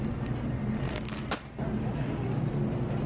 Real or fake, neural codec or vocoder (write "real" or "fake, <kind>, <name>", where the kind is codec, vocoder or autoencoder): real